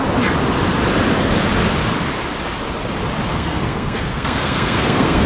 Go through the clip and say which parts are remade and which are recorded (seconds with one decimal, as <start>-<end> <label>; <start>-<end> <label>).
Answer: 0.0-3.3 recorded; 3.3-5.3 remade